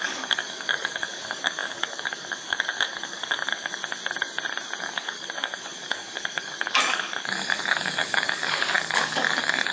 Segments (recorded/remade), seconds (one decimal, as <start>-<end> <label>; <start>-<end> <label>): 0.0-3.8 remade; 3.8-4.8 recorded; 4.8-9.7 remade